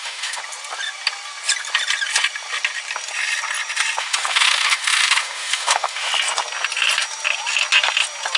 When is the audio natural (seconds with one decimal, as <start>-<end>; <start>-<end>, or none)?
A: 0.4-4.0; 6.1-8.4